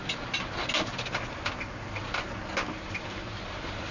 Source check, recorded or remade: recorded